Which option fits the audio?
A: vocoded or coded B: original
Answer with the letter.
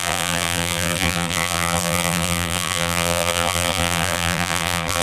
A